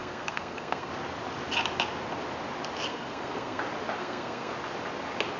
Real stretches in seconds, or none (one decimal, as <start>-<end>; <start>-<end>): 0.9-2.9; 3.6-4.0; 4.5-5.4